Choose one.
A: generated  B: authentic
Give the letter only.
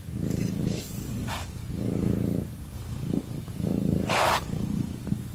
A